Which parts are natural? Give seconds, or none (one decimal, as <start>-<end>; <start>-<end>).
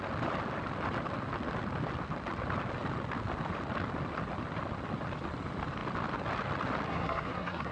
0.0-6.9